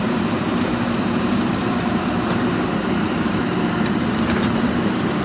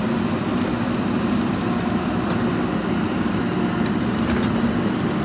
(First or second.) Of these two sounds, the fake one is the first